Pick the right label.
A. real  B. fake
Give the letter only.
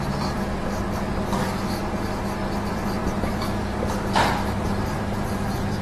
A